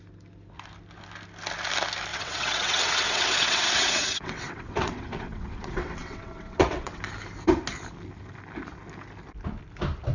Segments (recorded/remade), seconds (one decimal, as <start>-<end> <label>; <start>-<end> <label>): 0.0-2.1 recorded; 2.1-7.0 remade; 7.0-10.1 recorded